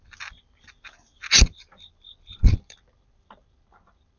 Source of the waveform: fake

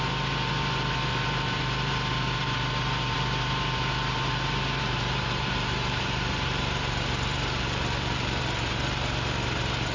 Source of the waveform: fake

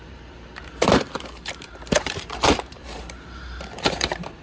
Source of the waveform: fake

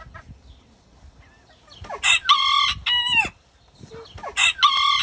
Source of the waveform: real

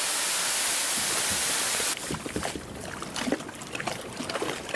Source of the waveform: fake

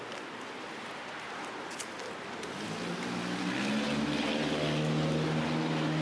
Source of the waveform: real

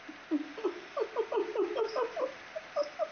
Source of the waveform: real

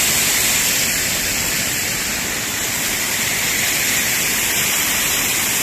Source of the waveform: fake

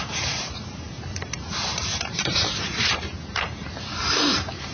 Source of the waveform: fake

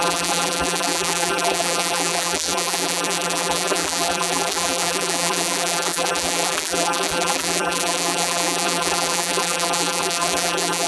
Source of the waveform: fake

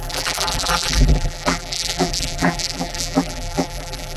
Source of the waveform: fake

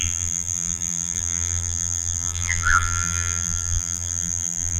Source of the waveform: fake